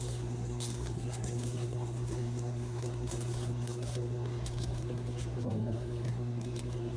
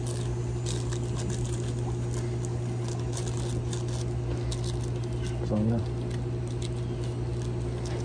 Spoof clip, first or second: first